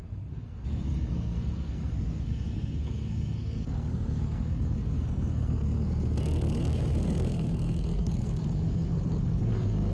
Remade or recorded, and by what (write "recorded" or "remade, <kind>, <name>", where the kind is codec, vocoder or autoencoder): remade, codec, SNAC